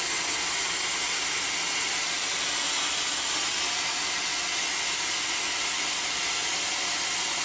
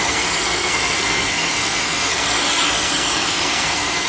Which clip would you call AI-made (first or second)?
second